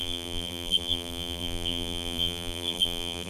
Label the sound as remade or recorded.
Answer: remade